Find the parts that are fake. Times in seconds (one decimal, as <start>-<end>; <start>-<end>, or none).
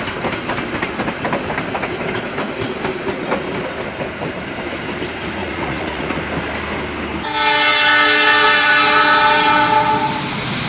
5.4-6.2